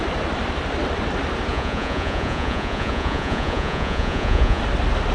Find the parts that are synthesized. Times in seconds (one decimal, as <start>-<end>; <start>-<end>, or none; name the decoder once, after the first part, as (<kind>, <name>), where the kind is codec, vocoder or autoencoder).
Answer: 1.5-4.6 (vocoder, Vocos)